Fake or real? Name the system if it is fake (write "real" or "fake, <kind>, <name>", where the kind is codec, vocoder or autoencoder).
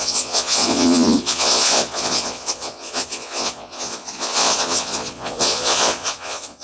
fake, vocoder, Vocos